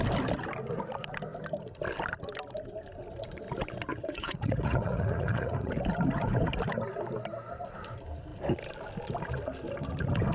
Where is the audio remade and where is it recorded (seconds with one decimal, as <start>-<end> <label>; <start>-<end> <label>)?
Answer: 0.0-3.9 recorded; 3.9-5.7 remade; 5.7-10.3 recorded